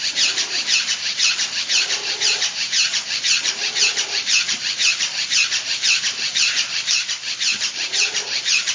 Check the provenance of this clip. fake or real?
fake